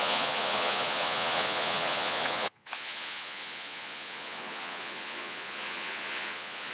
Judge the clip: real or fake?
fake